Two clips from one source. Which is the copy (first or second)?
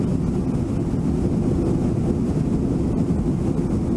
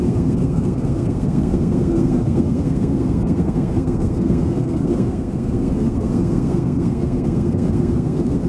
second